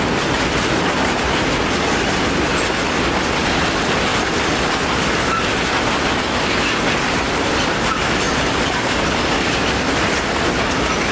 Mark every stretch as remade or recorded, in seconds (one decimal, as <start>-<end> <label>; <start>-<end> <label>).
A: 0.0-11.1 recorded